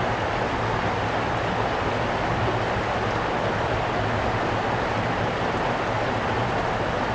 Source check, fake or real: real